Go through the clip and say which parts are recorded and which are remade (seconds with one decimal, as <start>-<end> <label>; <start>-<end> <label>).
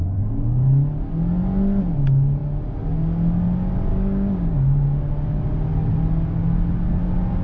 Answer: 0.0-3.9 recorded; 3.9-5.1 remade; 5.1-7.4 recorded